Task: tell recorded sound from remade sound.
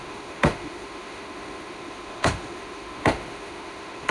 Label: remade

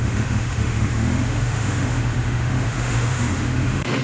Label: remade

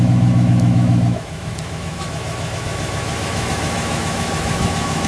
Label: remade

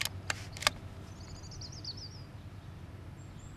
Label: recorded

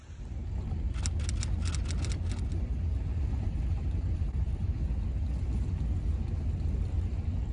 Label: recorded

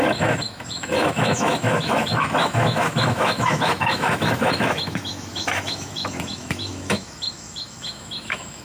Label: remade